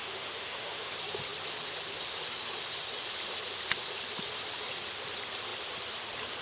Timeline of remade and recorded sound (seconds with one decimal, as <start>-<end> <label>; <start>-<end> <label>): 0.0-0.9 remade; 0.9-6.4 recorded